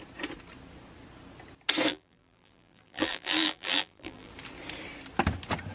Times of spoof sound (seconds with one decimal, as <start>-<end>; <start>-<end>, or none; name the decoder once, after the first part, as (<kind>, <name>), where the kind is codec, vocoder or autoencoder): 1.9-4.3 (vocoder, BigVGAN v2)